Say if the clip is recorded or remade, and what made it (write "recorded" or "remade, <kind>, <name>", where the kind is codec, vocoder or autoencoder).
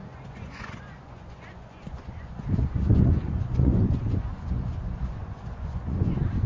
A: remade, vocoder, Vocos